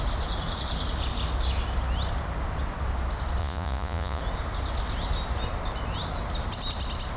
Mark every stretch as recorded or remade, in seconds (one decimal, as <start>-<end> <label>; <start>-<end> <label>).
0.0-3.4 recorded; 3.4-4.2 remade; 4.2-7.2 recorded